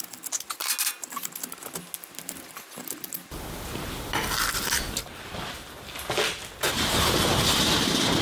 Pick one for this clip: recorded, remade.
recorded